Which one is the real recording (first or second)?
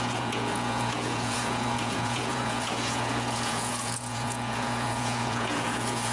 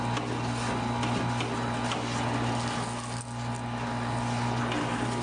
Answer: second